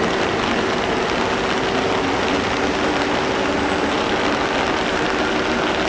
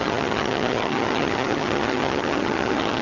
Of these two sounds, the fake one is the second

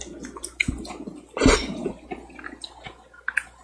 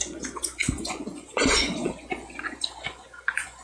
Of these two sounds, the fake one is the second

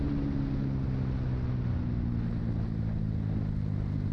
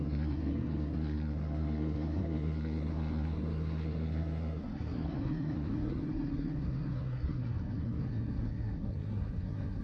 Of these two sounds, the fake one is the second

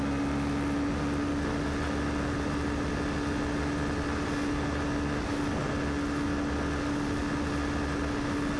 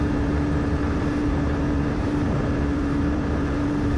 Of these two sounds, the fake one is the second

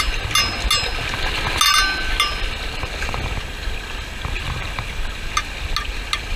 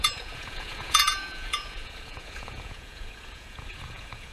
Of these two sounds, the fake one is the second